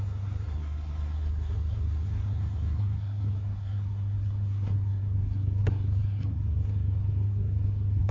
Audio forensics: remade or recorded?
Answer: remade